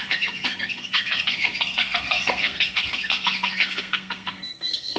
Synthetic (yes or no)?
yes